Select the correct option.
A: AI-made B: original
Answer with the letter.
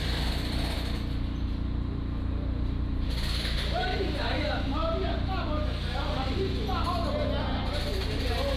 B